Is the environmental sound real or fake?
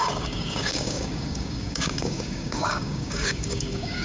fake